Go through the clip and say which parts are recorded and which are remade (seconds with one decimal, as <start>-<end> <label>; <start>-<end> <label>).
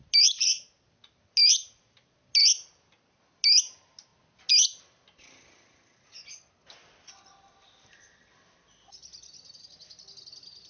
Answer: 0.0-10.7 recorded